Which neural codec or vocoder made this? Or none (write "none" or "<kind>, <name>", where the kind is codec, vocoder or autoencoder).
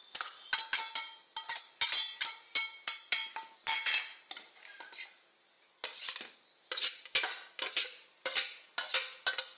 none